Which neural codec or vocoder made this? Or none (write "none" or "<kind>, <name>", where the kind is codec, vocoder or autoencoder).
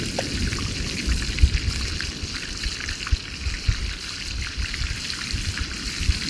none